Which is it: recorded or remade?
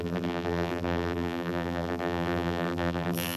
remade